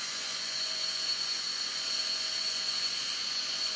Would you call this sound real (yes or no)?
no